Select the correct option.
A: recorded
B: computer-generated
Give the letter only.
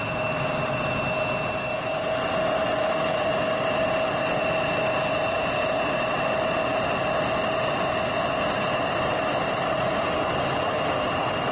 A